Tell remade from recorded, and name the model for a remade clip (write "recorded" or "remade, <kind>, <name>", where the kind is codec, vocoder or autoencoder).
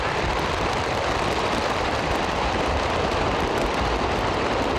recorded